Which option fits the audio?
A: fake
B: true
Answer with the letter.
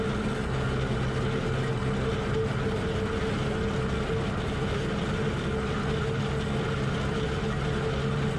B